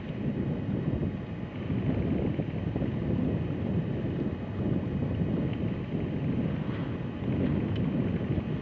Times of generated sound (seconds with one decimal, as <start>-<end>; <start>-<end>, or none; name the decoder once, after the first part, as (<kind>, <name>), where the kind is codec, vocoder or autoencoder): none

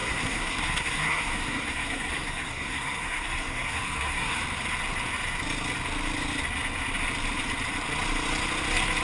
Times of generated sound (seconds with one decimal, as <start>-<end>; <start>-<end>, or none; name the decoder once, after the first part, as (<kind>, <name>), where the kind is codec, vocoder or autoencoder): 0.0-4.4 (codec, SNAC)

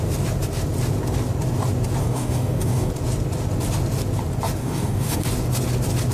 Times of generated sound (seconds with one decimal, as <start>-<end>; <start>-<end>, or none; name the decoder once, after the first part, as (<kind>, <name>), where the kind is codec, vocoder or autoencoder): 2.0-2.9 (codec, DAC); 4.6-5.2

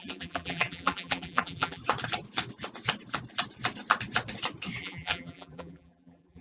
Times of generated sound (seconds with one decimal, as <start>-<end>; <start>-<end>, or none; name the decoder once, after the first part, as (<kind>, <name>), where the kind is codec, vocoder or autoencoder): 0.0-1.8 (vocoder, BigVGAN v2); 4.8-6.4

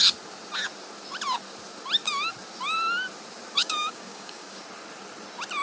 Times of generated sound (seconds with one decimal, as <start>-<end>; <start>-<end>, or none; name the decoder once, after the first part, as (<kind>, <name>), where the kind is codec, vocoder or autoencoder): 3.6-4.6 (codec, DAC)

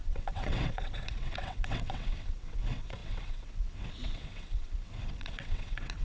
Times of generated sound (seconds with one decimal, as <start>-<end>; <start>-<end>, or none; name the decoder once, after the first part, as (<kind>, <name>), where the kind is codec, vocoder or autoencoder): 0.0-6.0 (vocoder, WaveNeXt)

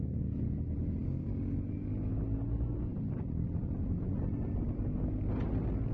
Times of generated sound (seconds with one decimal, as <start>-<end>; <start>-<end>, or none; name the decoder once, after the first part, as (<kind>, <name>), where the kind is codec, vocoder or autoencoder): 2.9-4.8 (vocoder, BigVGAN v2)

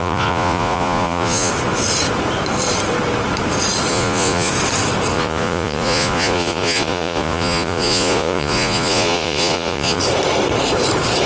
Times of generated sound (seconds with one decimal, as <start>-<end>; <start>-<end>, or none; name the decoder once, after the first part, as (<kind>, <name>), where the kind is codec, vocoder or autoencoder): 0.0-1.5 (vocoder, Vocos); 3.9-4.5; 5.1-10.0